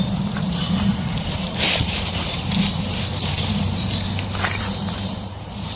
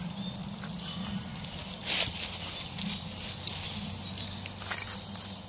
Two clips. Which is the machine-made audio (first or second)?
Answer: first